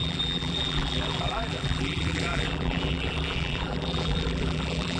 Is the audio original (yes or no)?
no